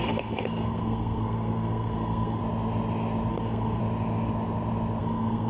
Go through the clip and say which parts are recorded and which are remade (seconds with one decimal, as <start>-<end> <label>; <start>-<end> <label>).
0.0-2.4 remade; 2.4-3.3 recorded; 3.3-3.8 remade; 3.8-5.0 recorded; 5.0-5.5 remade

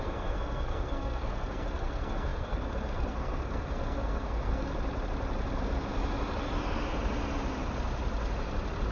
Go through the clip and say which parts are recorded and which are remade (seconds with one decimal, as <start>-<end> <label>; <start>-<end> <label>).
0.0-4.7 remade; 4.7-8.9 recorded

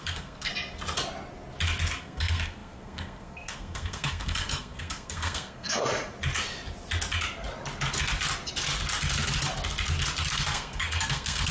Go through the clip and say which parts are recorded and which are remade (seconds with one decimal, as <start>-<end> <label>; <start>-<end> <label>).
0.0-0.5 remade; 0.5-2.0 recorded; 2.0-5.8 remade; 5.8-10.3 recorded; 10.3-11.5 remade

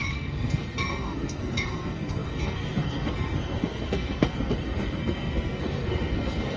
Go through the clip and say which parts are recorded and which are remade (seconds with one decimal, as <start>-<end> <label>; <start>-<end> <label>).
0.0-6.6 remade